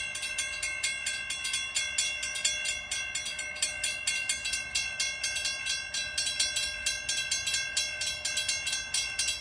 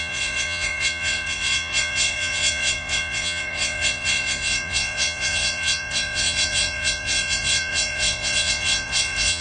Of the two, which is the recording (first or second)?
first